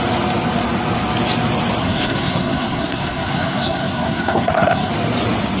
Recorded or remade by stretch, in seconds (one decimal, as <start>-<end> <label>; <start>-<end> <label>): 0.0-1.8 recorded; 1.8-4.9 remade; 4.9-5.6 recorded